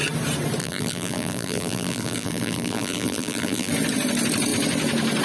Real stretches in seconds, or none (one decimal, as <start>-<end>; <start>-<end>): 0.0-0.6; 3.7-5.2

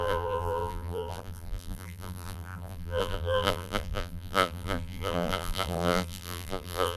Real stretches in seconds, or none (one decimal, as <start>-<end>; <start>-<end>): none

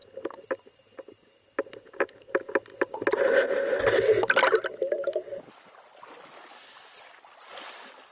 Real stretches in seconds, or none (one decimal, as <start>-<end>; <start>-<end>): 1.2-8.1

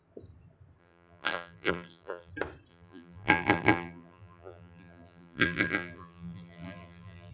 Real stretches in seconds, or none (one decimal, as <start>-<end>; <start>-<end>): 0.0-0.8; 2.3-2.7

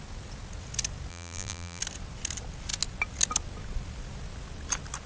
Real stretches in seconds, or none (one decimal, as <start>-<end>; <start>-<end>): 0.0-1.1; 1.8-5.1

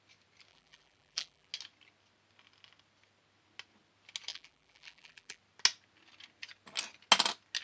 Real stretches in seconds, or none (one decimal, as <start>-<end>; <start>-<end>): 0.0-0.5; 1.5-4.3; 5.4-7.6

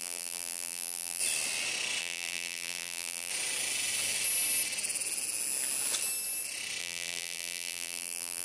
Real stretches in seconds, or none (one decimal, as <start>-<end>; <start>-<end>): 1.2-2.0; 3.3-6.8

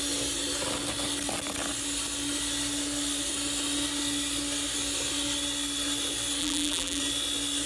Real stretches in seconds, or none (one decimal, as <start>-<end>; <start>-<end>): 0.0-6.4; 7.0-7.7